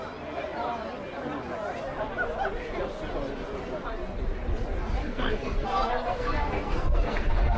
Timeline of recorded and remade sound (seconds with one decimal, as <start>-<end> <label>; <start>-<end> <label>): 0.0-5.0 recorded; 5.0-7.6 remade